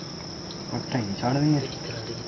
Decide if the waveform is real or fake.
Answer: real